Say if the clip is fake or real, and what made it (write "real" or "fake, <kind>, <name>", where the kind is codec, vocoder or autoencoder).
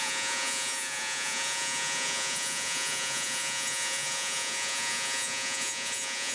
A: fake, vocoder, Vocos